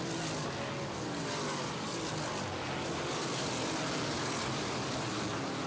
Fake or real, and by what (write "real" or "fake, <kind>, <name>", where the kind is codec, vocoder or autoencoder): real